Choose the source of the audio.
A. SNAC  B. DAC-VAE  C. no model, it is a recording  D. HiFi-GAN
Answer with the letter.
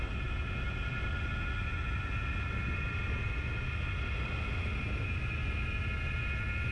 C